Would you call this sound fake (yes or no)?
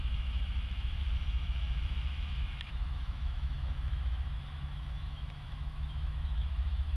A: yes